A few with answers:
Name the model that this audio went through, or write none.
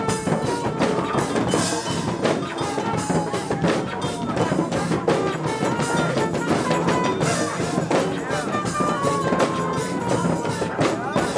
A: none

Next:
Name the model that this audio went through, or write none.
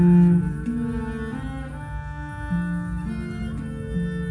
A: none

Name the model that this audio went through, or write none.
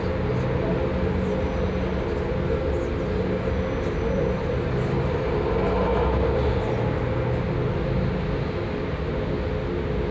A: none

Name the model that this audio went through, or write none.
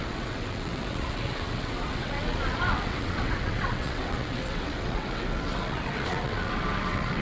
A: vocoder, WaveNeXt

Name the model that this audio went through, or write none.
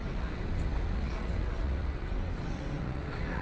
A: vocoder, WaveNeXt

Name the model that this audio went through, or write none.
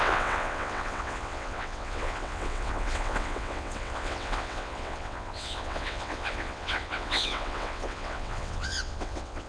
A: vocoder, WaveNeXt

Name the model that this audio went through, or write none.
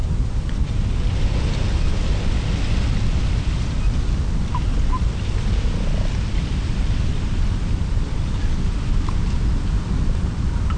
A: none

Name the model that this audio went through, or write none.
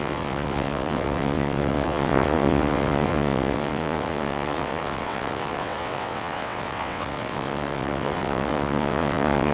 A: vocoder, WaveNeXt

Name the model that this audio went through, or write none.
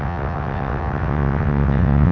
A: vocoder, WaveNeXt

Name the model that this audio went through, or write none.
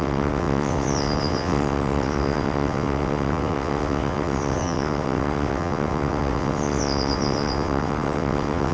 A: vocoder, WaveNeXt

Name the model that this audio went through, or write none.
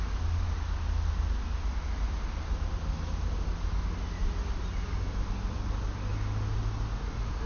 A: none